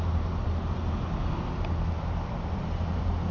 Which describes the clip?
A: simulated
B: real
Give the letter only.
B